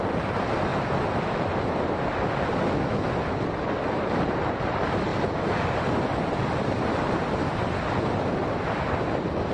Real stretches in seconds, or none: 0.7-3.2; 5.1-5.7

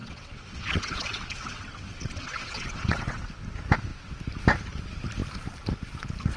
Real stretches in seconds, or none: 3.2-6.4

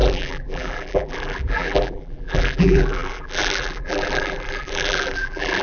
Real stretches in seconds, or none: none